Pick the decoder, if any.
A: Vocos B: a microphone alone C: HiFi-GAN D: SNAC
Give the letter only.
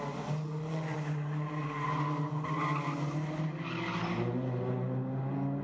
B